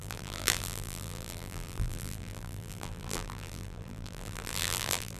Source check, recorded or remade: remade